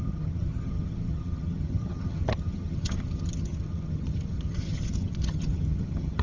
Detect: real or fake fake